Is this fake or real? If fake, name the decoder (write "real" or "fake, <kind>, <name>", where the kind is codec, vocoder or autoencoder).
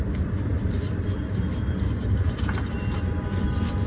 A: fake, vocoder, BigVGAN v2